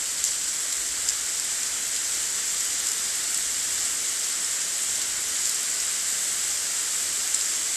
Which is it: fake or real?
real